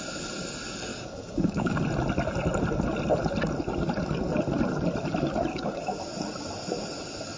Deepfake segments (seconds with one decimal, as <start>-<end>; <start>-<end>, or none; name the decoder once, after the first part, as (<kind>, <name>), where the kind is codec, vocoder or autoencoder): 0.9-1.8 (codec, DAC); 5.5-6.0